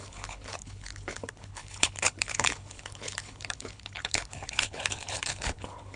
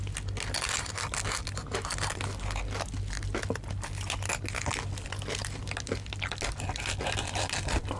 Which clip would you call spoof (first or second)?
first